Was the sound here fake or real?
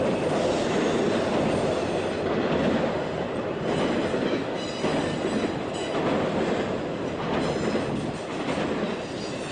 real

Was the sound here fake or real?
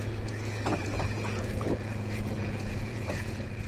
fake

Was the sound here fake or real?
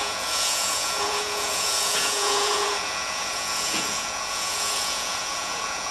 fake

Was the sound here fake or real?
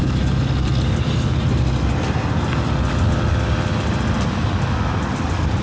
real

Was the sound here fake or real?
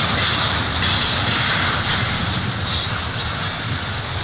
real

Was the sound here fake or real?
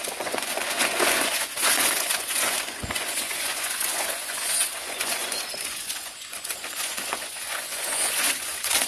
fake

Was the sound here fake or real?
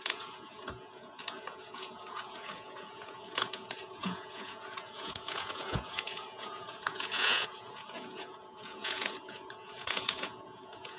fake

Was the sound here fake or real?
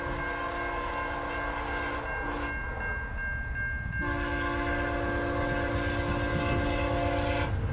real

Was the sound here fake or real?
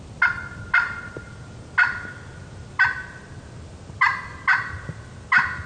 real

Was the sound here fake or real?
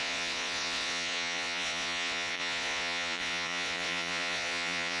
fake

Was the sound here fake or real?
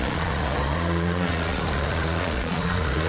fake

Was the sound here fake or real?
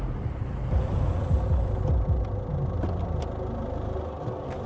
real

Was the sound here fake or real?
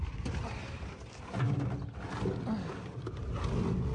real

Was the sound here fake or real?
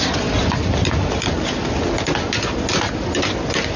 real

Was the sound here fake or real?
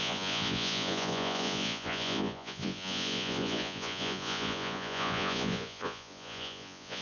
fake